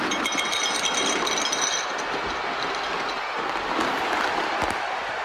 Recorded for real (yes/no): yes